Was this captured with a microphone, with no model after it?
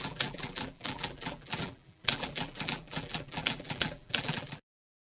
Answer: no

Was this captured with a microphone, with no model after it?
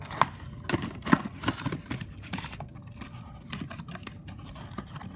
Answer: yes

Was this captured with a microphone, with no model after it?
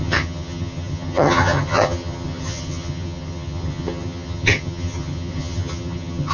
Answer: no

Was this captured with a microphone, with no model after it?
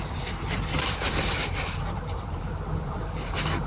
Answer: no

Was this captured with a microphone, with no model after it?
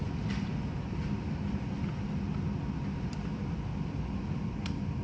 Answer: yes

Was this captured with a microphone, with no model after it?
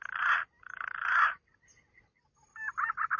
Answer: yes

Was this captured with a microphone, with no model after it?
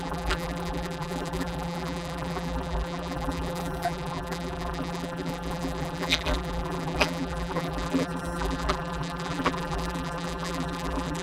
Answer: no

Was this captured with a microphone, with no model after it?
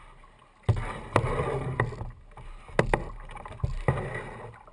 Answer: yes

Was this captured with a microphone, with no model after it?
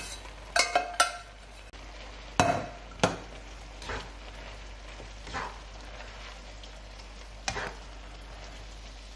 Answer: yes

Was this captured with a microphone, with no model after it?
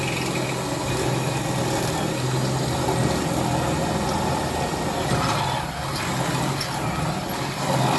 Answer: yes